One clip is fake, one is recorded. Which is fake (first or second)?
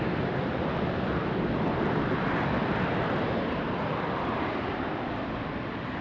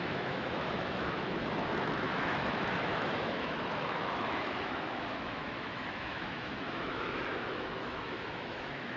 second